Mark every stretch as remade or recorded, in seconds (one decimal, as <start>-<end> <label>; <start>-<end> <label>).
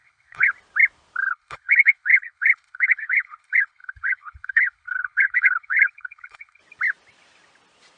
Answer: 0.0-0.5 remade; 0.5-1.3 recorded; 1.3-6.6 remade; 6.6-8.0 recorded